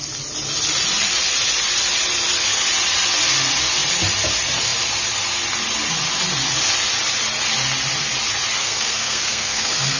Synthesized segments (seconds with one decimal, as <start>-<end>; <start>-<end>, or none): 8.6-10.0